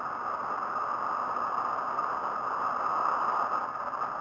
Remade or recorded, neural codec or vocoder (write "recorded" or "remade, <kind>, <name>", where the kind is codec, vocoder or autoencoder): recorded